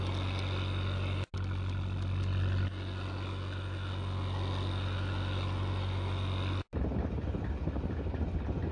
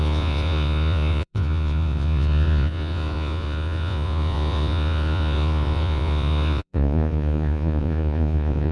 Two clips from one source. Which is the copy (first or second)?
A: second